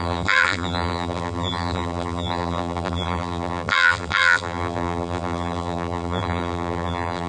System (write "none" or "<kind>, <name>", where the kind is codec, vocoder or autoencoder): vocoder, BigVGAN v2